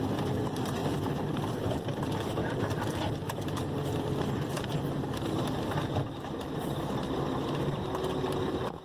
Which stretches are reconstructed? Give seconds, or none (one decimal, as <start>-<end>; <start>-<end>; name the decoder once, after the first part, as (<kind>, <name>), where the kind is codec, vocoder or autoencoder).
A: 2.4-5.4 (vocoder, BigVGAN v2)